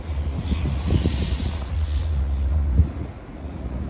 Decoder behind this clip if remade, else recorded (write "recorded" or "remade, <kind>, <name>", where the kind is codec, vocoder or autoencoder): remade, vocoder, Vocos